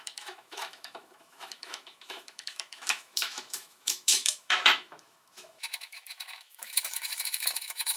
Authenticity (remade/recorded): remade